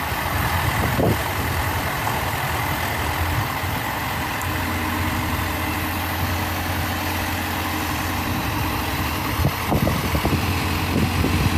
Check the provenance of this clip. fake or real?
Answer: real